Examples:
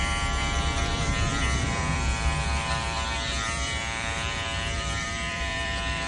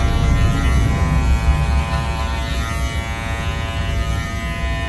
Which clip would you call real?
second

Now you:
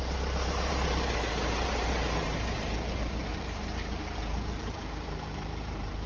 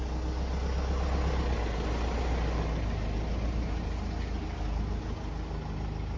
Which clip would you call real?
second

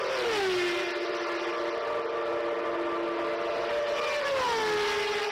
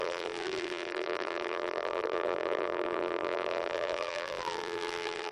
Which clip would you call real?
first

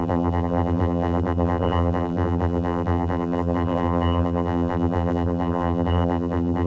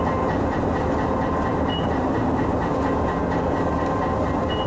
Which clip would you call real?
second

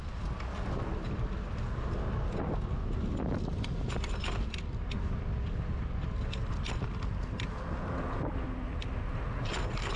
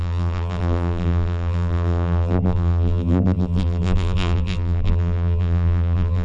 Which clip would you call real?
first